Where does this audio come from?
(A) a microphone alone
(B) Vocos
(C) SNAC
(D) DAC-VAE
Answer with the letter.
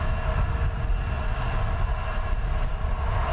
A